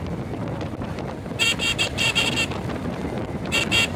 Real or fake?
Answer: real